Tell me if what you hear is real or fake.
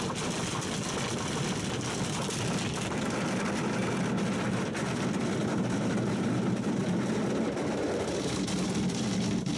real